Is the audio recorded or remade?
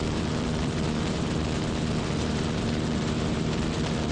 remade